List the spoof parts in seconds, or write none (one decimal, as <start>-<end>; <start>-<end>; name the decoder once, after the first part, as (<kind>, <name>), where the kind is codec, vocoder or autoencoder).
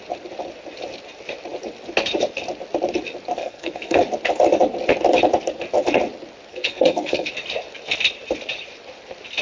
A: 3.4-4.0 (codec, SNAC); 6.5-7.3